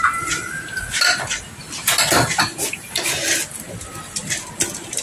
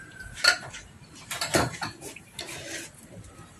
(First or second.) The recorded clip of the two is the first